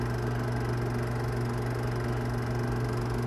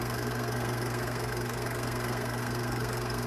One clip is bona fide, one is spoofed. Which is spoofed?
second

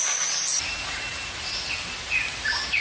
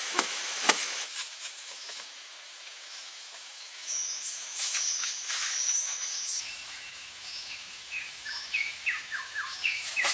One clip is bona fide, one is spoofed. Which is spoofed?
second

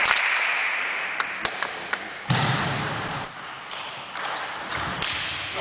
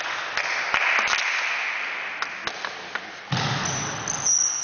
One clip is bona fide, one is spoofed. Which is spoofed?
first